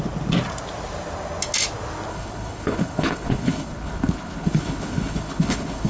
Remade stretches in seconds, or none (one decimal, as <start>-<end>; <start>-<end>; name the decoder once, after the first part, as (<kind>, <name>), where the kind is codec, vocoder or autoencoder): 2.1-5.9 (codec, HILCodec)